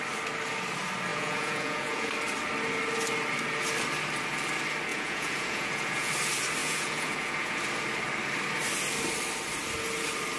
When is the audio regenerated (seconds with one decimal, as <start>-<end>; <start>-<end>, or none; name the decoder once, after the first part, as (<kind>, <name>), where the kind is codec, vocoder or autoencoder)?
1.1-2.1 (vocoder, Vocos); 4.9-6.1; 6.6-7.6